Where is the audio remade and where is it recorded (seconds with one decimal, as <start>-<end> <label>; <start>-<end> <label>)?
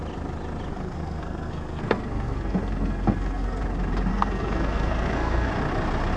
0.0-0.7 recorded; 0.7-3.6 remade; 3.6-4.1 recorded; 4.1-5.5 remade; 5.5-6.2 recorded